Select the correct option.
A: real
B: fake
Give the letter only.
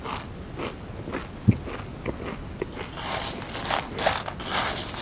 A